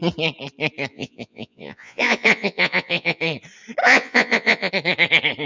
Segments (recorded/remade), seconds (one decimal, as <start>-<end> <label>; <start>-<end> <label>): 0.0-0.9 recorded; 0.9-3.2 remade; 3.2-3.8 recorded; 3.8-4.7 remade; 4.7-5.5 recorded